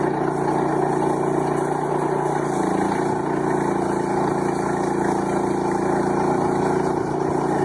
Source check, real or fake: real